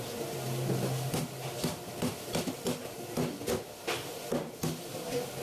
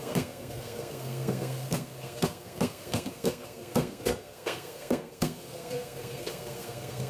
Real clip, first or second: first